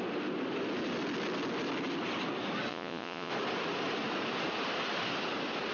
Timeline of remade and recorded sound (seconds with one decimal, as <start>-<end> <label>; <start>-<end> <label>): 0.0-2.7 recorded; 2.7-3.3 remade; 3.3-5.7 recorded